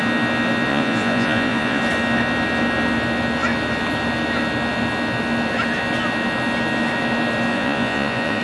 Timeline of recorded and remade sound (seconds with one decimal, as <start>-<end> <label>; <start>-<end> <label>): 0.0-0.7 recorded; 0.7-1.8 remade; 1.8-7.5 recorded; 7.5-8.4 remade